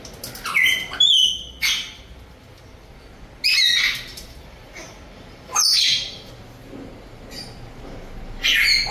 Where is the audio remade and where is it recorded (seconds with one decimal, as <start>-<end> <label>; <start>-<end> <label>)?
0.0-4.1 recorded; 4.1-6.3 remade; 6.3-8.9 recorded